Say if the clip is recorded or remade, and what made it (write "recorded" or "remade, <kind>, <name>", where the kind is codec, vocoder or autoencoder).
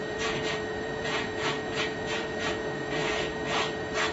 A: remade, vocoder, Vocos